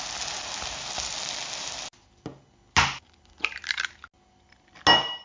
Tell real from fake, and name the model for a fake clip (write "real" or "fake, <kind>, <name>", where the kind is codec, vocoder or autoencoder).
real